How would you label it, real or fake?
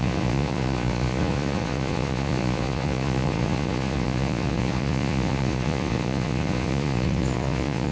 fake